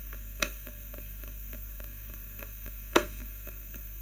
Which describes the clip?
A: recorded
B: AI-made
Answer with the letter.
B